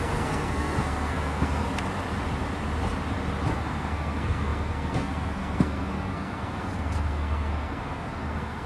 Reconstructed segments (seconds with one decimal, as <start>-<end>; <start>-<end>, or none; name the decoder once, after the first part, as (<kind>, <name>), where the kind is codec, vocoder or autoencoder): 0.0-1.7 (codec, SNAC); 3.5-8.7

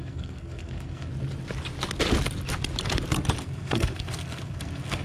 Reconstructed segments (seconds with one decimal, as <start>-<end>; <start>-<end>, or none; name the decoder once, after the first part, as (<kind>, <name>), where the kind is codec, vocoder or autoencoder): 0.0-1.1 (codec, SNAC); 3.4-5.0

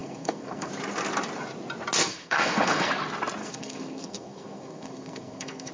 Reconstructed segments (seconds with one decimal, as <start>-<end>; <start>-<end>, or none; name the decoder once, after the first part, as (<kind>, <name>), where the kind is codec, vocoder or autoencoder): 0.0-0.7 (codec, SNAC); 2.0-2.9; 3.4-5.7

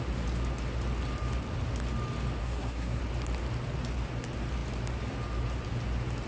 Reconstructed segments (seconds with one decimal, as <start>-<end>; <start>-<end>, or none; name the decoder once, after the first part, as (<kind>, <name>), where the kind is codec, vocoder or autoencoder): 2.4-3.0 (codec, SNAC)

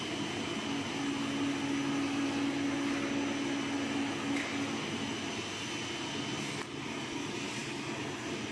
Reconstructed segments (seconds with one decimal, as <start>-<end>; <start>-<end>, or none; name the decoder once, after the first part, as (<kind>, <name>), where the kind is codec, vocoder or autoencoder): none

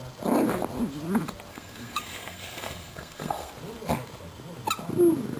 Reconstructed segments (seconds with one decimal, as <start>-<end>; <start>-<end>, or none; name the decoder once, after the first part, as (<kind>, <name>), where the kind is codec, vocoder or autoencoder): 1.5-3.5 (codec, SNAC)